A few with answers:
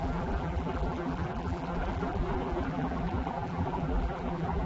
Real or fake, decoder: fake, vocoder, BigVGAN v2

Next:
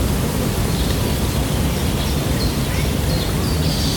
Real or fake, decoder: real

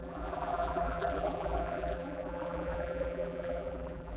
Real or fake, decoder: fake, vocoder, BigVGAN v2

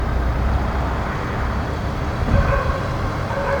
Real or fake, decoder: fake, vocoder, BigVGAN v2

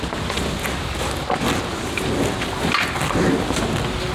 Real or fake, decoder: real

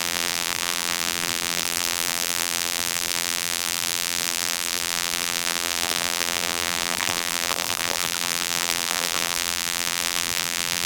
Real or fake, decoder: fake, vocoder, BigVGAN v2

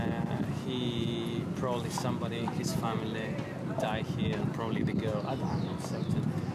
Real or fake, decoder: real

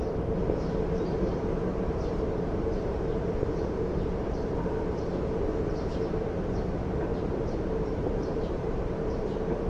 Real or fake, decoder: fake, vocoder, BigVGAN v2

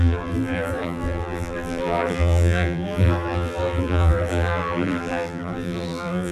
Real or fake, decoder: fake, vocoder, BigVGAN v2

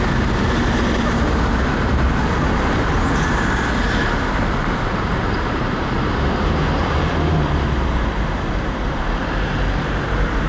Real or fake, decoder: fake, vocoder, BigVGAN v2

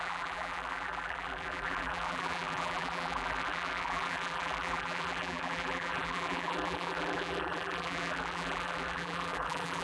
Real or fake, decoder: fake, vocoder, BigVGAN v2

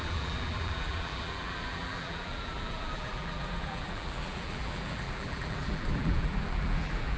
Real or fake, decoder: fake, vocoder, BigVGAN v2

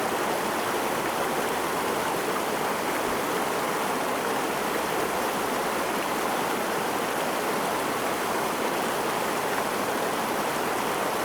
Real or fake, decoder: real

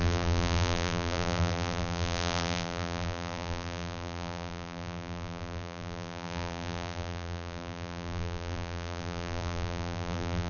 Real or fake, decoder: fake, vocoder, BigVGAN v2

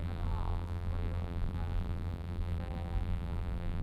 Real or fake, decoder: fake, vocoder, BigVGAN v2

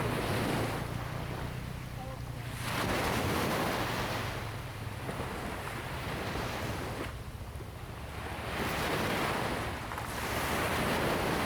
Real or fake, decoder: real